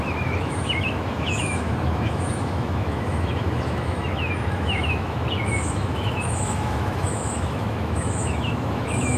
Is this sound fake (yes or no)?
yes